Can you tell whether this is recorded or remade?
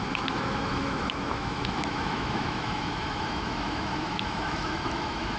remade